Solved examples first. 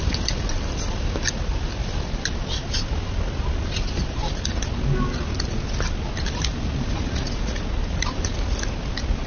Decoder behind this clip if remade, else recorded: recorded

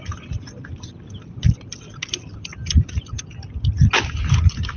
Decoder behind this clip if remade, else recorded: recorded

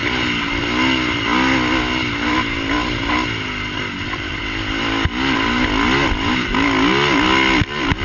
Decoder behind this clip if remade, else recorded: recorded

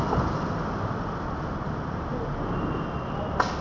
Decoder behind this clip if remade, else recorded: recorded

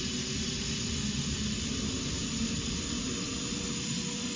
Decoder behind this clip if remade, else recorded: recorded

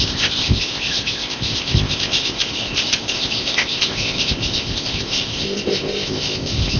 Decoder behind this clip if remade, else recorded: remade, codec, ZipCodec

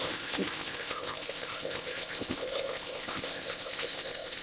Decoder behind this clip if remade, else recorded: remade, codec, ZipCodec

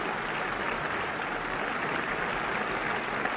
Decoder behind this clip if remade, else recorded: recorded